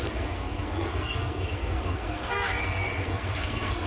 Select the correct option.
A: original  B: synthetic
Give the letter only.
B